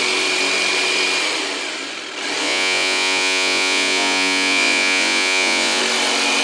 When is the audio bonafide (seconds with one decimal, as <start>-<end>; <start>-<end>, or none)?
0.0-2.4; 5.8-6.4